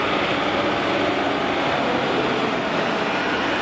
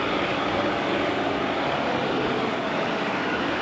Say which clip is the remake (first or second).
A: second